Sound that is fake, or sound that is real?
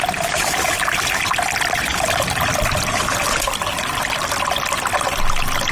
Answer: real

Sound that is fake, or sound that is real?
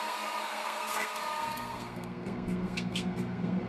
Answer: fake